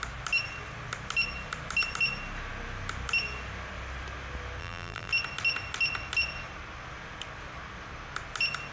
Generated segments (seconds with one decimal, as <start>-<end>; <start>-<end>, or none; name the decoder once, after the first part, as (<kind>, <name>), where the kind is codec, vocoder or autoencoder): 4.6-5.1 (vocoder, BigVGAN v2)